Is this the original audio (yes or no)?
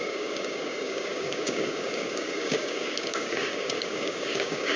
no